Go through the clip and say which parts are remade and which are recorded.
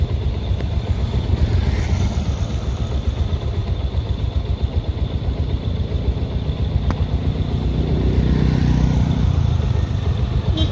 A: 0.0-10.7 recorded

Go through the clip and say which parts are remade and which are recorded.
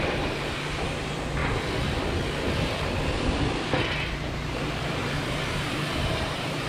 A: 0.0-1.4 remade; 1.4-4.1 recorded; 4.1-6.7 remade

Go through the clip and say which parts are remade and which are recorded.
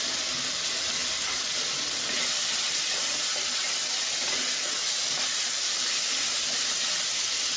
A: 0.0-7.6 recorded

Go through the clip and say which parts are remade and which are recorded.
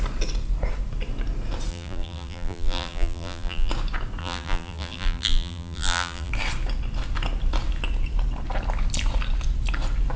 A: 0.0-1.7 recorded; 1.7-3.7 remade; 3.7-4.2 recorded; 4.2-6.3 remade; 6.3-10.2 recorded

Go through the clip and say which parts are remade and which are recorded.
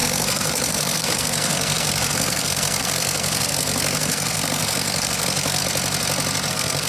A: 0.0-5.6 remade; 5.6-6.5 recorded; 6.5-6.9 remade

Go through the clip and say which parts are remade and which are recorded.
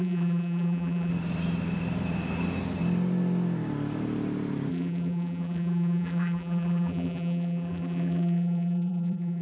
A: 0.0-1.1 remade; 1.1-4.7 recorded; 4.7-9.4 remade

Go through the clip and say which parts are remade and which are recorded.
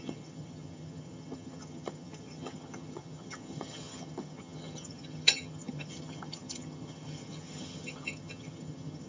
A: 0.0-9.1 remade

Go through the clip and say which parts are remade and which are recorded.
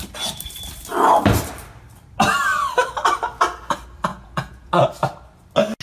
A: 0.0-4.1 recorded; 4.1-4.7 remade; 4.7-5.8 recorded